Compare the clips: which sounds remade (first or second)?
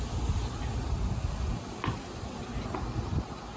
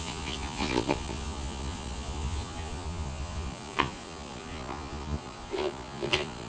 second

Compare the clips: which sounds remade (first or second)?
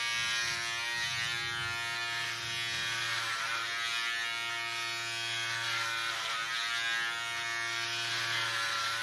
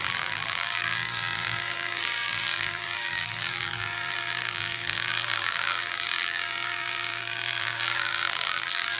second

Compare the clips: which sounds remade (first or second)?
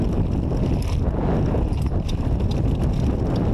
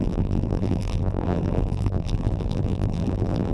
second